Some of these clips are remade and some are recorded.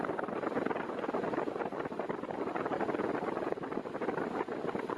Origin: recorded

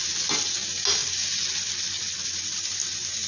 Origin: recorded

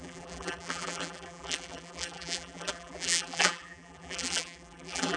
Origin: remade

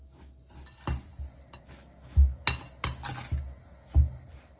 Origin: recorded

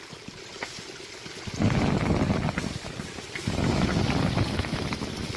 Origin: recorded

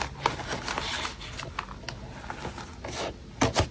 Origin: recorded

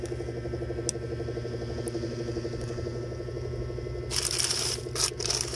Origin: recorded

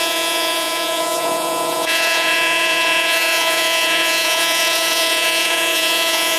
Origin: remade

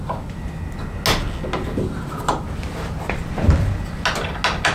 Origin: recorded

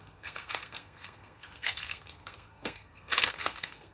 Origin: remade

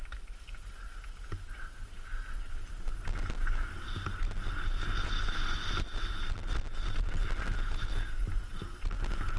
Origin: recorded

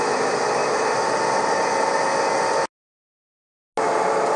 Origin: recorded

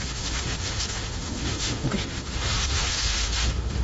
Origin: remade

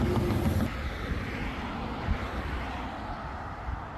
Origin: remade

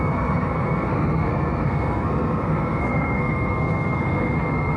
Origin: remade